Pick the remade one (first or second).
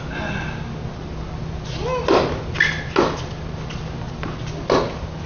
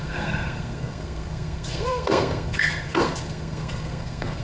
second